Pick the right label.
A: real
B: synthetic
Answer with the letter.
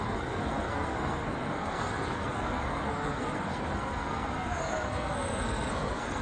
B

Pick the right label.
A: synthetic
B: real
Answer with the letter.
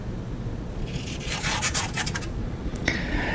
A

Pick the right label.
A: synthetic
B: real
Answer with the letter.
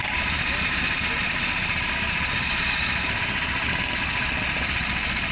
B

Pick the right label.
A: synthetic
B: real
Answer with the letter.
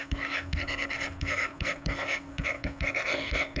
A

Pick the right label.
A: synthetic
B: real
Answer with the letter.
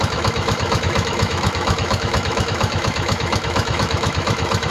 A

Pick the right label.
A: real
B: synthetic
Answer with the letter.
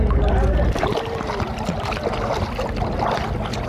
A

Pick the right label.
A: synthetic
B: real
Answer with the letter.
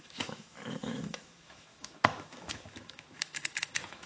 A